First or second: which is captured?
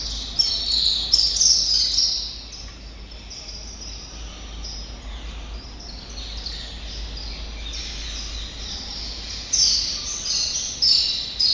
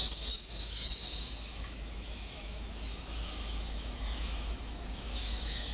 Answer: first